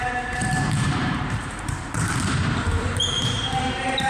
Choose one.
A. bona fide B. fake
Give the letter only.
B